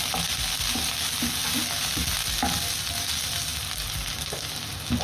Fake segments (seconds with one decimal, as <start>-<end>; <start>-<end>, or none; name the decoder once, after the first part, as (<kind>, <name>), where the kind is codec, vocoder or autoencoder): none